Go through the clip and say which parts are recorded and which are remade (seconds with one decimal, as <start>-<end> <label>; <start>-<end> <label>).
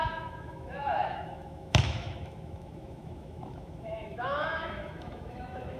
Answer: 0.0-5.8 remade